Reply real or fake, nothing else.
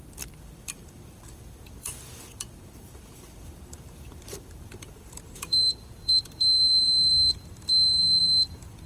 fake